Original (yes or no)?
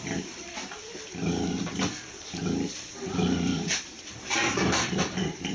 no